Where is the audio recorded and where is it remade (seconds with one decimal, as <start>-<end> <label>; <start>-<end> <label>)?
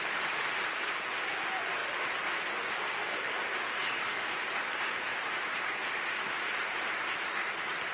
0.0-5.1 recorded; 5.1-7.5 remade; 7.5-7.9 recorded